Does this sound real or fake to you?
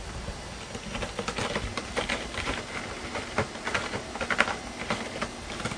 real